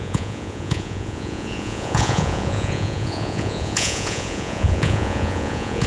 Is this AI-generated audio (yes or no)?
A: yes